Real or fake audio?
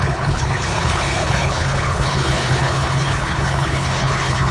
fake